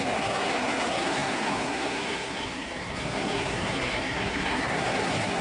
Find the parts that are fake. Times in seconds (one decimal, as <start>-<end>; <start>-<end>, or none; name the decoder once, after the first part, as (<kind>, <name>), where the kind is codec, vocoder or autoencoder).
0.0-5.4 (codec, SNAC)